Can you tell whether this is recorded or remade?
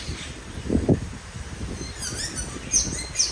recorded